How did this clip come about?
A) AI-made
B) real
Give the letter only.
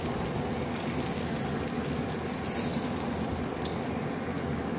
B